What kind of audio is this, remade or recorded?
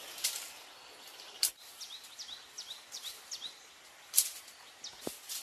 recorded